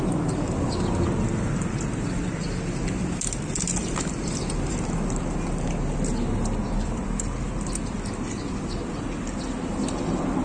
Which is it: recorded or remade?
recorded